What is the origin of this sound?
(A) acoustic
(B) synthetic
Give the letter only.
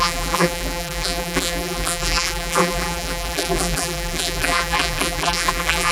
B